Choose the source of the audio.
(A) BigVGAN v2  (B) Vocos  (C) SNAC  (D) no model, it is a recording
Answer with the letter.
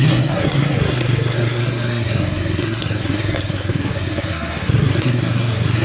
C